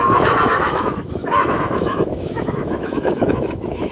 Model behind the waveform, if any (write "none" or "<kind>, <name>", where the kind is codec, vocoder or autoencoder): autoencoder, DAC-VAE